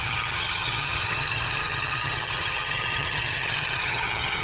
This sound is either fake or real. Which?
fake